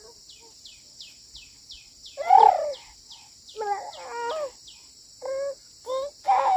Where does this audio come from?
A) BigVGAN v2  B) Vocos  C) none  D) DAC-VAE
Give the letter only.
C